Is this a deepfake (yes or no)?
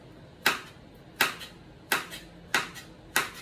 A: no